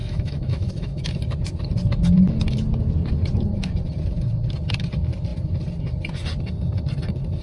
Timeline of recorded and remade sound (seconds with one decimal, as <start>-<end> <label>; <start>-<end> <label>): 0.0-1.1 remade; 1.1-7.4 recorded